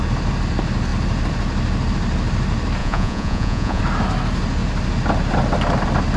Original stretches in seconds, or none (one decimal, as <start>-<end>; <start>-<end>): 0.0-2.8; 3.8-6.2